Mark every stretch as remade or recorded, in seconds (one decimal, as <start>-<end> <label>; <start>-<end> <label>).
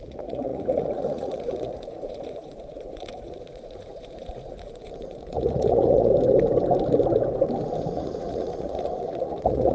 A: 0.0-6.1 remade; 6.1-7.8 recorded; 7.8-9.7 remade